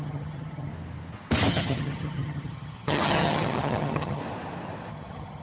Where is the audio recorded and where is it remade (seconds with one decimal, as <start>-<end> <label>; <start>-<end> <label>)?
0.0-0.7 remade; 0.7-1.5 recorded; 1.5-4.2 remade; 4.2-4.9 recorded; 4.9-5.4 remade